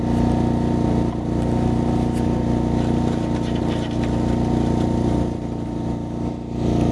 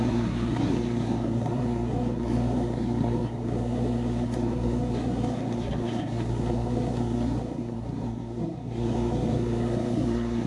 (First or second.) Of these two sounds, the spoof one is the second